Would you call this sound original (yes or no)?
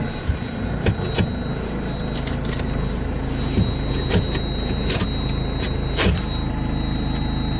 yes